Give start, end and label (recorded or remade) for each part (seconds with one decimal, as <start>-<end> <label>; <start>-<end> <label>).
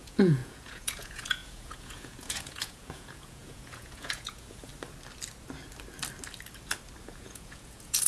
0.0-4.7 remade; 4.7-7.0 recorded; 7.0-8.1 remade